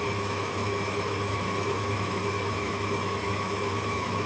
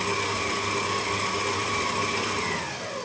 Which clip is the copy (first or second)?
first